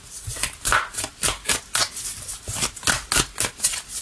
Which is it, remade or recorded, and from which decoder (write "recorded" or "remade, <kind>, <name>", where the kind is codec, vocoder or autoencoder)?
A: recorded